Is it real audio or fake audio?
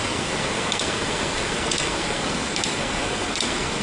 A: fake